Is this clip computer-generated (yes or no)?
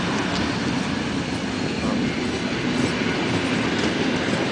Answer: no